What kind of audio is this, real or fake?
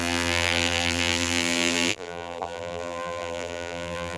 fake